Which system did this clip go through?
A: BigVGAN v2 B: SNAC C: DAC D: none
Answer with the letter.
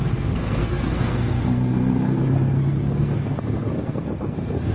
B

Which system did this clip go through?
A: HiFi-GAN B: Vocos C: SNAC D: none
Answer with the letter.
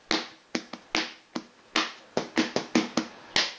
D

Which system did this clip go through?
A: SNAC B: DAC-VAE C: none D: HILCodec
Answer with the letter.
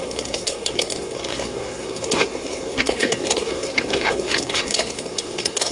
A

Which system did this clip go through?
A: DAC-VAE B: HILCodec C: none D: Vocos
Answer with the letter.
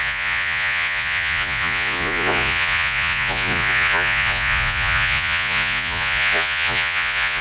D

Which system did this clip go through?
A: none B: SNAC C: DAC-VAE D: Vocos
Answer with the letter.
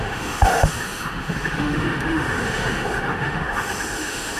C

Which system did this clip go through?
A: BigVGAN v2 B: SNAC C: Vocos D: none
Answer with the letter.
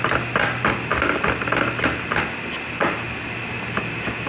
D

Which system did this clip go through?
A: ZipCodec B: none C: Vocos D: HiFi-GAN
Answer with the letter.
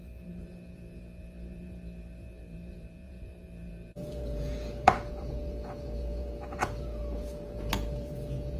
C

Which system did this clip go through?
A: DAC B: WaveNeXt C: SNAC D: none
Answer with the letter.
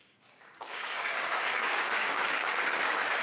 A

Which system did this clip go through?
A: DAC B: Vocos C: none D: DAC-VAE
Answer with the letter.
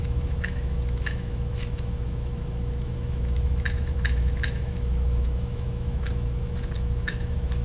D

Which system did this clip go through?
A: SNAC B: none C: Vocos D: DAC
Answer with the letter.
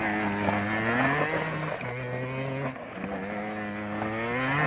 B